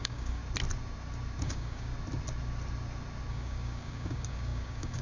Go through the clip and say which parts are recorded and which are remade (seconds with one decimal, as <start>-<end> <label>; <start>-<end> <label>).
0.0-0.4 remade; 0.4-1.4 recorded; 1.4-1.9 remade; 1.9-3.3 recorded; 3.3-5.0 remade